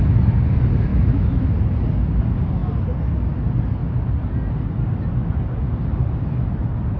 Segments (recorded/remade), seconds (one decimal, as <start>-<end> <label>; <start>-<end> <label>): 0.0-0.9 recorded; 0.9-1.5 remade; 1.5-7.0 recorded